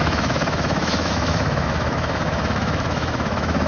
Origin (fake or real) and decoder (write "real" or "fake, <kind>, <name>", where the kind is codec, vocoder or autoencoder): fake, autoencoder, DAC-VAE